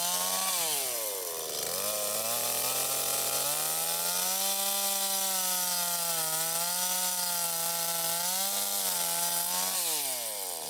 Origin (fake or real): real